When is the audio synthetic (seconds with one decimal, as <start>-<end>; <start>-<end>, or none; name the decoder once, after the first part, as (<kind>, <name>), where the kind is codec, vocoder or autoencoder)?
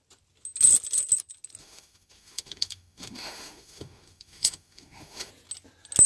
1.6-5.3 (autoencoder, DAC-VAE)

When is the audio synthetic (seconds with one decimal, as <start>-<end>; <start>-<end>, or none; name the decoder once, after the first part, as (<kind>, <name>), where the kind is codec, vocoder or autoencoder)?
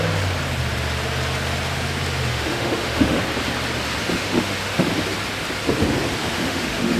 2.3-3.2 (autoencoder, DAC-VAE); 4.0-4.9; 6.2-7.0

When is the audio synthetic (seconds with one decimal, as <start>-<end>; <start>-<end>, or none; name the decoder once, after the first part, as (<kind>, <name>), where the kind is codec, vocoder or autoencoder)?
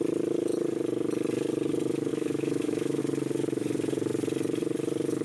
2.1-3.0 (autoencoder, DAC-VAE)